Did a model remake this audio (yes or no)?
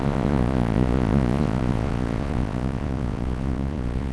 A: yes